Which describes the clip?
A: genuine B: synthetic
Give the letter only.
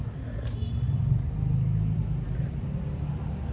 A